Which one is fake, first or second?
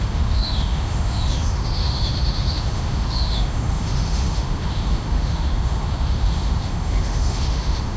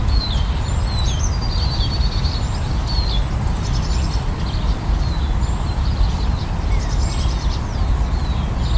first